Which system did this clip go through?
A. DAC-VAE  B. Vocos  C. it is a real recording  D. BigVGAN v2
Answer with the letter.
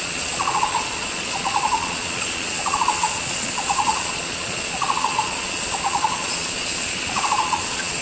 B